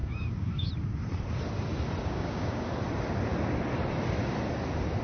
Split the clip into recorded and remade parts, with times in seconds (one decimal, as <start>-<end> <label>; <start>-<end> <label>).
0.0-0.7 remade; 0.7-2.0 recorded; 2.0-2.7 remade; 2.7-5.0 recorded